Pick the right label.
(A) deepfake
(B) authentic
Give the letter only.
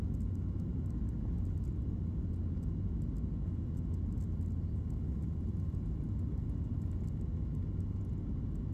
B